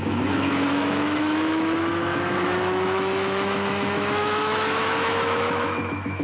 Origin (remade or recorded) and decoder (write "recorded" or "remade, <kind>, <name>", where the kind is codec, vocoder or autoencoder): remade, autoencoder, DAC-VAE